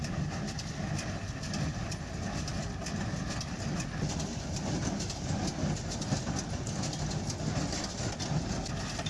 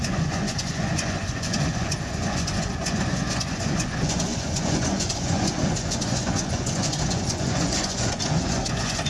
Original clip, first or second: first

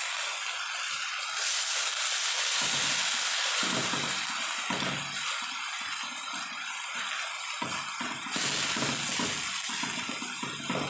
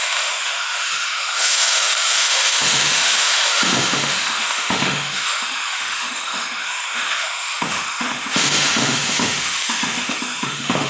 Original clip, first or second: first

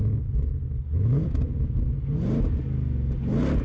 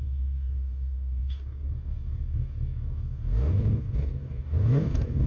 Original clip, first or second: first